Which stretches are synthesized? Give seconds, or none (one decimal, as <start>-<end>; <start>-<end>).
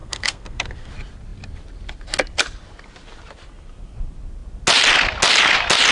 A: 0.0-0.9